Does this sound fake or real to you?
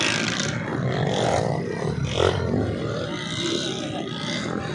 real